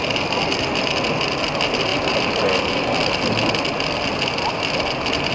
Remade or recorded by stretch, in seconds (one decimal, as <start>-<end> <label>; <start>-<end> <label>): 0.0-5.3 recorded